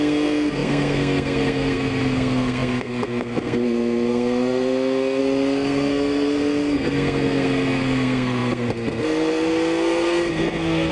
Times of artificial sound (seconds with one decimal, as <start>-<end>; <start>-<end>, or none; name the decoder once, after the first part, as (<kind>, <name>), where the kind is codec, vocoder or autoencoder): 0.0-10.9 (codec, SNAC)